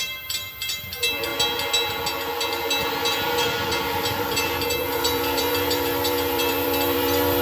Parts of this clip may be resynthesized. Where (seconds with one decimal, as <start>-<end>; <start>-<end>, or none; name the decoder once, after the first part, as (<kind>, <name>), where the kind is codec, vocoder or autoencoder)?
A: 0.0-1.3 (vocoder, BigVGAN v2); 4.1-7.4